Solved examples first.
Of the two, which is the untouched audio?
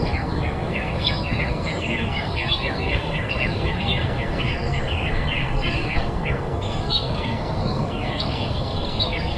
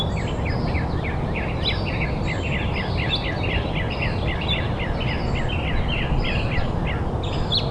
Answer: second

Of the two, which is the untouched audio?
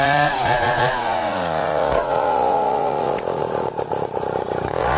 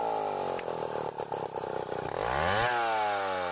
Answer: second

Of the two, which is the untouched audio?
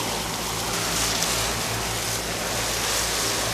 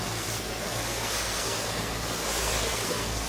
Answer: first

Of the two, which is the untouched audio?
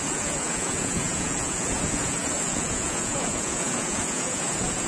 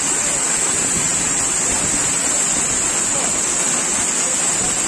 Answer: second